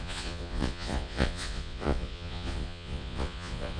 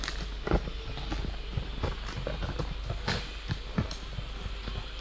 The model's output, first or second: first